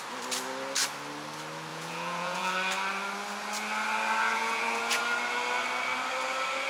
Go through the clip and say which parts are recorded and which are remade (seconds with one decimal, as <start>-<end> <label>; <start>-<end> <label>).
0.0-1.7 recorded; 1.7-2.5 remade; 2.5-4.3 recorded; 4.3-5.0 remade; 5.0-6.7 recorded